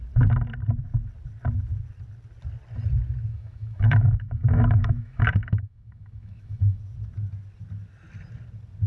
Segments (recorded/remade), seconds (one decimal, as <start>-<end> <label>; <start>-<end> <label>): 0.0-3.3 recorded; 3.3-6.8 remade; 6.8-8.9 recorded